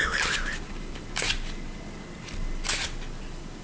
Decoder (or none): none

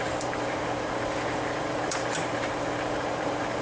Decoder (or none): vocoder, BigVGAN v2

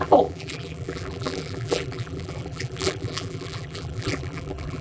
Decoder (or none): vocoder, BigVGAN v2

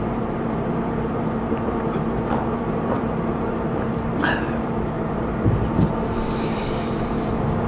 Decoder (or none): vocoder, BigVGAN v2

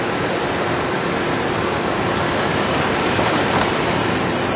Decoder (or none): none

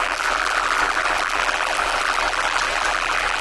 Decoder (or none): vocoder, BigVGAN v2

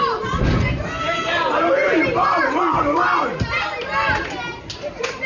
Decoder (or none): vocoder, BigVGAN v2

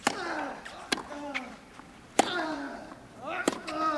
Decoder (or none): none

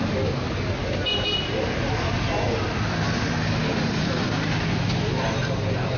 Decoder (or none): none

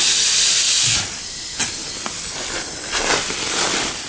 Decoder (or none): vocoder, BigVGAN v2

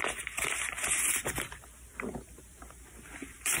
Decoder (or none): vocoder, BigVGAN v2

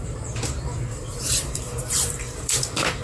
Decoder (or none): vocoder, BigVGAN v2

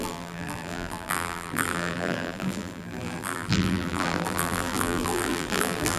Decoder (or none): vocoder, BigVGAN v2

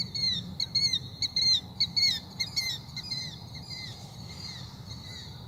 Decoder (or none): none